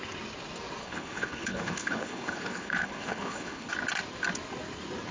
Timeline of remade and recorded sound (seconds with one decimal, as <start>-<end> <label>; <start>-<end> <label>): 0.0-0.8 recorded; 0.8-3.7 remade; 3.7-5.1 recorded

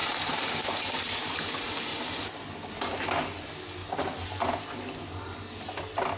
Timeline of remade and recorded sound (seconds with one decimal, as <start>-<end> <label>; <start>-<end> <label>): 0.0-1.4 remade; 1.4-3.8 recorded; 3.8-4.4 remade; 4.4-6.2 recorded